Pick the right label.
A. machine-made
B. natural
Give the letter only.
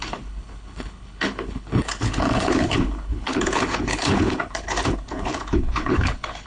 A